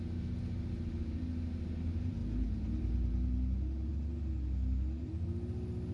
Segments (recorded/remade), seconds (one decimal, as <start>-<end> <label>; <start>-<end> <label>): 0.0-2.2 recorded; 2.2-3.9 remade; 3.9-5.9 recorded